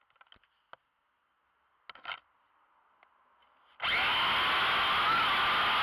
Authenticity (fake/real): real